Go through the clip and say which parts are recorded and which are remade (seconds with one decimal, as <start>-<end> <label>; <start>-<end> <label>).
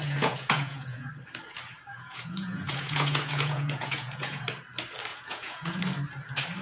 0.0-1.1 remade; 1.1-1.9 recorded; 1.9-4.4 remade; 4.4-5.1 recorded; 5.1-5.8 remade; 5.8-6.6 recorded